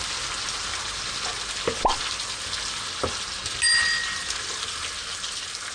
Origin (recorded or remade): recorded